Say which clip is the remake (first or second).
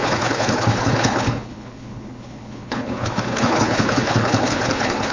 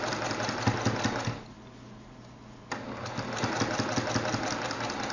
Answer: first